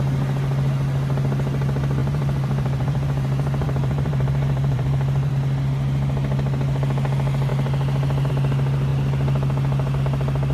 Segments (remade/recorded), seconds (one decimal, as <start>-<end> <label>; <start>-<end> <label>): 0.0-2.0 recorded; 2.0-5.3 remade; 5.3-10.5 recorded